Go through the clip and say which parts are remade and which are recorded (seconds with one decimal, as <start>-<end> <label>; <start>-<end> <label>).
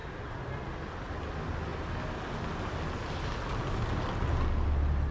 0.0-0.6 remade; 0.6-5.1 recorded